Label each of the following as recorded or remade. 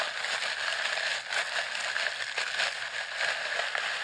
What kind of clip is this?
recorded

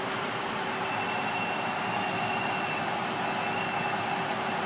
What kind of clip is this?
recorded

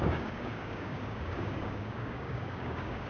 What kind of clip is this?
remade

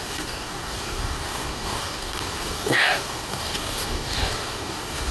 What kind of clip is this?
remade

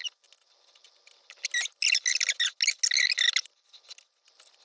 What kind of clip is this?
recorded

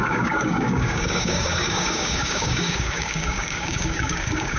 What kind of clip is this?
remade